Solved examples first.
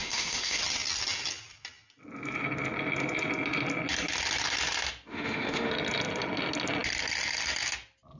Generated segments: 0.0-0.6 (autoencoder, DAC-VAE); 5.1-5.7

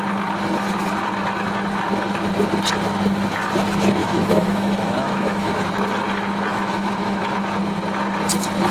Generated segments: 4.0-5.5 (autoencoder, DAC-VAE); 6.5-7.2